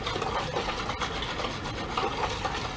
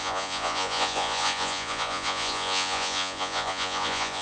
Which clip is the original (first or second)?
first